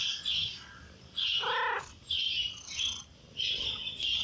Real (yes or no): yes